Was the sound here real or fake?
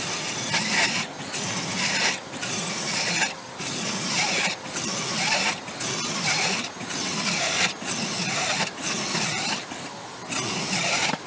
real